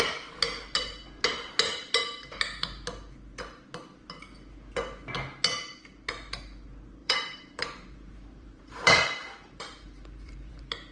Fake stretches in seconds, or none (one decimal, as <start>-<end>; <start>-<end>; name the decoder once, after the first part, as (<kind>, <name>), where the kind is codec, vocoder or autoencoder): 7.0-10.5 (vocoder, BigVGAN v2)

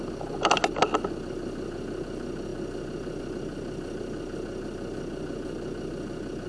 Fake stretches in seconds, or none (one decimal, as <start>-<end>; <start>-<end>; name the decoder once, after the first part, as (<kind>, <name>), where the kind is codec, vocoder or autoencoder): none

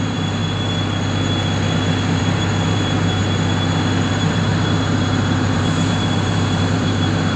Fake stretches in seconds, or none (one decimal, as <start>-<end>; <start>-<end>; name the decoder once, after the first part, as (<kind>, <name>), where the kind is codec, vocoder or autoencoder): 0.0-0.4 (vocoder, BigVGAN v2); 2.2-3.2; 4.1-7.4

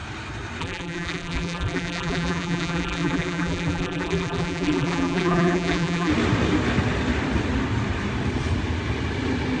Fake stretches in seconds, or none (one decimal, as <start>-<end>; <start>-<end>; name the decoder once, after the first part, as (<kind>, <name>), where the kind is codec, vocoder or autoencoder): 0.6-6.1 (vocoder, BigVGAN v2)

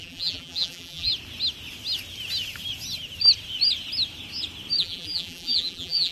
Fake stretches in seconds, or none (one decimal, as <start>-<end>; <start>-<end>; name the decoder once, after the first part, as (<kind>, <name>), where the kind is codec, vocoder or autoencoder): 0.0-1.1 (vocoder, BigVGAN v2); 4.8-6.1

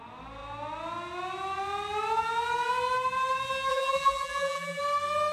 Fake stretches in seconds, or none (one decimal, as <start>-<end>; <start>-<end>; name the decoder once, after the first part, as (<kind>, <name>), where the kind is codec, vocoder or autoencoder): 3.7-4.8 (vocoder, BigVGAN v2)